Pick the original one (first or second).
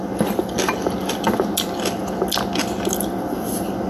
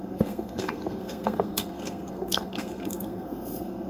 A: first